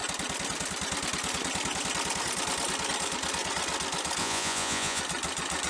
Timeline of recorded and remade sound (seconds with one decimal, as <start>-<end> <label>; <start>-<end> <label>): 0.0-4.2 recorded; 4.2-5.0 remade; 5.0-5.7 recorded

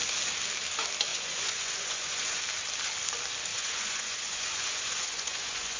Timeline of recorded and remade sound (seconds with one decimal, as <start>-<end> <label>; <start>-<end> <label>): 0.0-1.1 recorded; 1.1-2.4 remade; 2.4-3.5 recorded; 3.5-5.8 remade

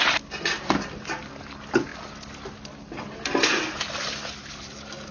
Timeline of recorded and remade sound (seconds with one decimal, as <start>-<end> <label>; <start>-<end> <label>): 0.0-5.1 recorded

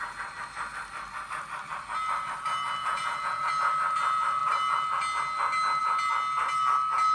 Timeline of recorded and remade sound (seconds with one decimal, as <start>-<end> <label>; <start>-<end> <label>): 0.0-2.8 recorded; 2.8-3.5 remade; 3.5-7.1 recorded